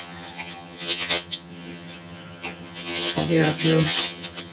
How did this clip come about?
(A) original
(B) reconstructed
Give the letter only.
B